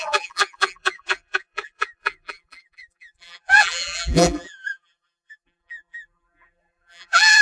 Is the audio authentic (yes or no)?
no